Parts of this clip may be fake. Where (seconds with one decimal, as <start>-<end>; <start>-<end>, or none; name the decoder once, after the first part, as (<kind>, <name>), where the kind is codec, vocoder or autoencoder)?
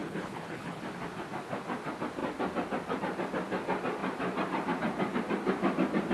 0.0-0.8 (codec, HILCodec)